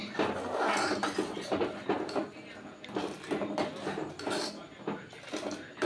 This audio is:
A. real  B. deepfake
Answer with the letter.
A